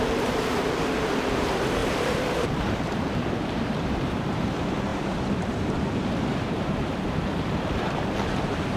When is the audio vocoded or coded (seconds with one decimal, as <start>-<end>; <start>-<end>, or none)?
0.0-8.8